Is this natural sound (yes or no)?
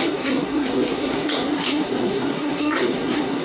no